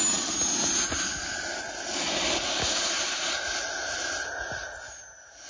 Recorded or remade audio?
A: recorded